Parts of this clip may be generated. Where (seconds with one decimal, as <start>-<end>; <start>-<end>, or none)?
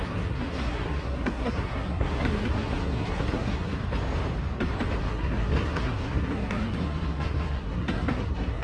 0.0-3.8; 5.0-8.6